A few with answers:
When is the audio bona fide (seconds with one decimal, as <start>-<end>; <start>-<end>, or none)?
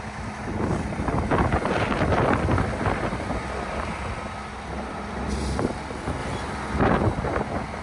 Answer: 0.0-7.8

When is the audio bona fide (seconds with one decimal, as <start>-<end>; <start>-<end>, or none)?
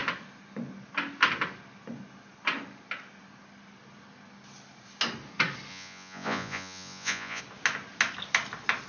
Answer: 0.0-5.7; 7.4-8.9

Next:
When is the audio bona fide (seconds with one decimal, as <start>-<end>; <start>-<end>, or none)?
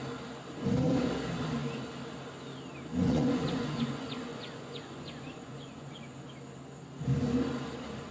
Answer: 0.0-3.0; 6.2-8.1